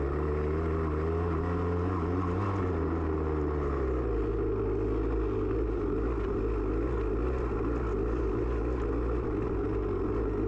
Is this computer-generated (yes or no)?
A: no